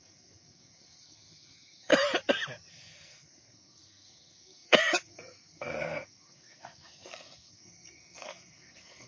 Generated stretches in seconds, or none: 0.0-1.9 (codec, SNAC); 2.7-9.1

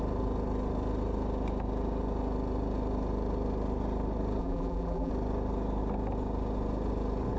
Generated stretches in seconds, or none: 4.4-5.1 (vocoder, BigVGAN v2)

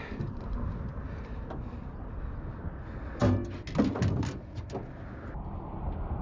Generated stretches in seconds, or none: none